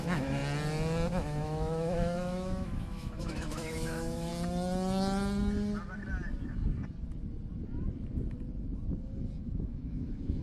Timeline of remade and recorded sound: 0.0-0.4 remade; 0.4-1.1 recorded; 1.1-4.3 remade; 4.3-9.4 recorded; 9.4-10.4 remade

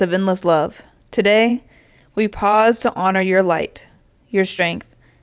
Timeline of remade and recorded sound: 0.0-1.5 recorded; 1.5-4.6 remade; 4.6-5.2 recorded